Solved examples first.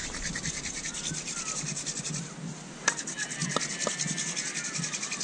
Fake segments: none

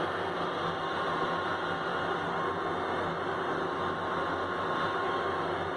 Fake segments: none

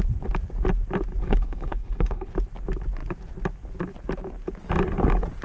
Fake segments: 1.2-2.3 (codec, HILCodec)